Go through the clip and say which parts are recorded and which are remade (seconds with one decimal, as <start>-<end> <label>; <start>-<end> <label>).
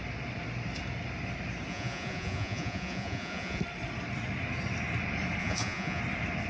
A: 0.0-1.7 recorded; 1.7-3.6 remade; 3.6-5.4 recorded; 5.4-6.0 remade; 6.0-6.5 recorded